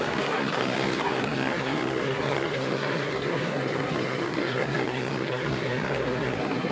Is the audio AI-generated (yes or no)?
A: yes